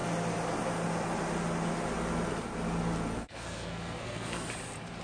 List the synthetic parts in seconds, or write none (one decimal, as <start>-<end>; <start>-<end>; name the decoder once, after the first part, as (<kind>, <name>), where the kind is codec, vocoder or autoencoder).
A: 3.1-4.5 (codec, SNAC)